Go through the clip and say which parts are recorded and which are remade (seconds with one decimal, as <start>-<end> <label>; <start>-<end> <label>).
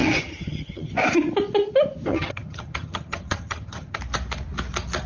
0.0-0.9 remade; 0.9-2.1 recorded; 2.1-4.0 remade; 4.0-5.1 recorded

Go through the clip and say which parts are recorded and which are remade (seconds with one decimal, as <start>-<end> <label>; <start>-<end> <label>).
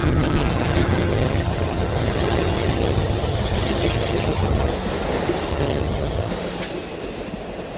0.0-4.7 remade; 4.7-5.5 recorded; 5.5-6.3 remade; 6.3-7.8 recorded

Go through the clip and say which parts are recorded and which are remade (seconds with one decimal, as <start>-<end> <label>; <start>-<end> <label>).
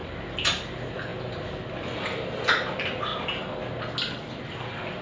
0.0-5.0 recorded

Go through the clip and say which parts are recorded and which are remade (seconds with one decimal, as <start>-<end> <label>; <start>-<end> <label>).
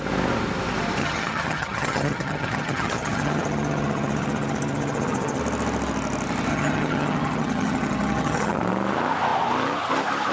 0.0-1.0 recorded; 1.0-5.4 remade; 5.4-6.5 recorded; 6.5-8.6 remade; 8.6-10.3 recorded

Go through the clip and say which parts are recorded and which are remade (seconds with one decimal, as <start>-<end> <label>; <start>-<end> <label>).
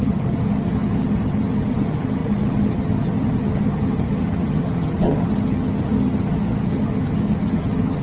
0.0-8.0 remade